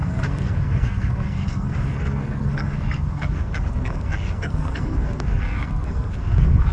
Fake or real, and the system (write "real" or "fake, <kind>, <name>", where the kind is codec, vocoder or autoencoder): fake, codec, SNAC